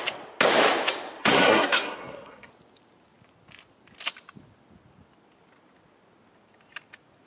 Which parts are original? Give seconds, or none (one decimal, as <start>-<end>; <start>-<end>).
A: 0.0-1.2; 2.5-7.3